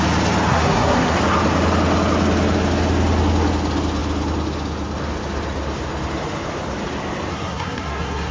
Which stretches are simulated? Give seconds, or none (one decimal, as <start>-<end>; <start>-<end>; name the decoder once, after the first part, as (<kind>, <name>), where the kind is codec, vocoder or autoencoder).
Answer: 0.5-1.2 (codec, SNAC); 7.3-8.3